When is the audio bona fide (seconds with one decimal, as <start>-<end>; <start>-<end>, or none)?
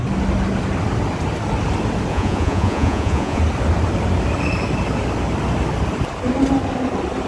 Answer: 0.0-2.1; 3.4-7.3